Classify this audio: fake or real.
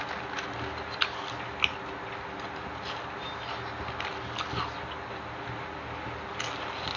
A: real